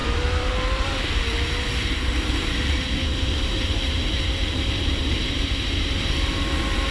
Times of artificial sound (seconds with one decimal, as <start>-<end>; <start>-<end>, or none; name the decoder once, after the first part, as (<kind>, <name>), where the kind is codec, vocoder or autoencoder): 0.0-6.9 (vocoder, BigVGAN v2)